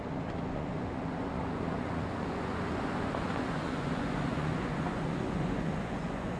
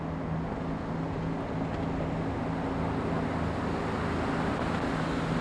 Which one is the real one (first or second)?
second